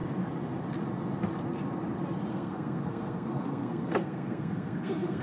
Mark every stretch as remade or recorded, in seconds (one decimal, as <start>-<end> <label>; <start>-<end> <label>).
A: 0.0-2.3 recorded; 2.3-5.2 remade